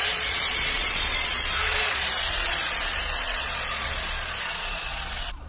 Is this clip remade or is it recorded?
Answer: remade